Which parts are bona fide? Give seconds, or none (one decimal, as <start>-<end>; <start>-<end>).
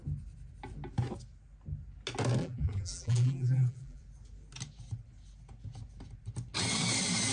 0.0-2.4; 4.0-7.3